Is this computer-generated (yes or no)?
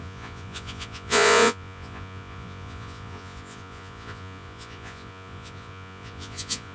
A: yes